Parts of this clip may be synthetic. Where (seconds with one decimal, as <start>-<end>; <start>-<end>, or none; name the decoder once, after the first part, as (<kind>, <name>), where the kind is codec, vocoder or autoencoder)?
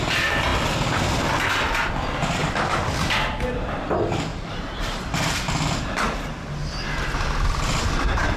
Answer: 4.3-5.0 (vocoder, BigVGAN v2)